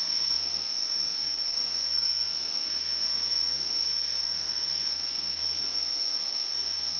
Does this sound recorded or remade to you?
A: remade